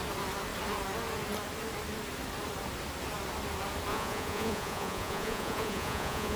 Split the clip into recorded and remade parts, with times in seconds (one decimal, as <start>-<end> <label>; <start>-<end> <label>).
0.0-3.9 recorded; 3.9-6.4 remade